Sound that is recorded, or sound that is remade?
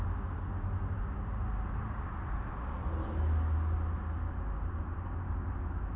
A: recorded